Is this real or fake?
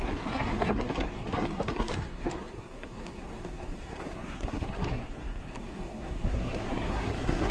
fake